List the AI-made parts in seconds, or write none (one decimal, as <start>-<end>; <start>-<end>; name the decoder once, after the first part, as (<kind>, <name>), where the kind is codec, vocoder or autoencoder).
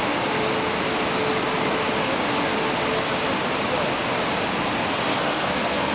5.1-5.9 (codec, SNAC)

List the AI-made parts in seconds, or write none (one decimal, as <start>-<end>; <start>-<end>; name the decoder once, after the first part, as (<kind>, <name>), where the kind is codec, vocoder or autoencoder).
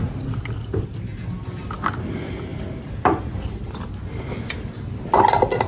none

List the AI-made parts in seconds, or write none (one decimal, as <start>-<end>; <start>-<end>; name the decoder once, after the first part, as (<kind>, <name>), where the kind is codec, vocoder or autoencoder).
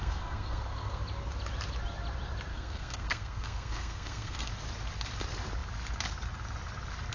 0.0-1.0 (codec, SNAC); 2.5-4.5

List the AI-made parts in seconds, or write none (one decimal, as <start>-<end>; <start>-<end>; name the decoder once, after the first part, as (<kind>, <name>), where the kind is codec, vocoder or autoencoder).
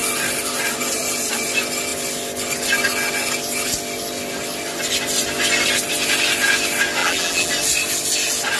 7.0-7.5 (vocoder, BigVGAN v2)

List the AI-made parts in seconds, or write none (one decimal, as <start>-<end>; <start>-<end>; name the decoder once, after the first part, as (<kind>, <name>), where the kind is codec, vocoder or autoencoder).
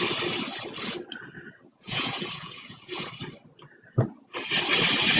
1.7-3.1 (vocoder, Vocos)